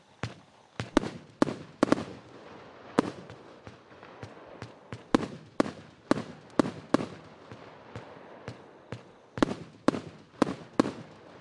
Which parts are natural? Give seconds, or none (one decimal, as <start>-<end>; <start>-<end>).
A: 0.0-2.1; 4.5-11.4